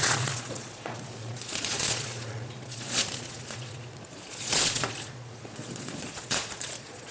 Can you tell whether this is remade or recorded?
remade